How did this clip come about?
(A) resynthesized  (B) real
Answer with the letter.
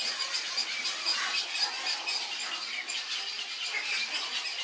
B